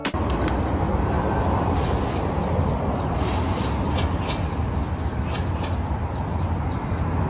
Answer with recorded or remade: recorded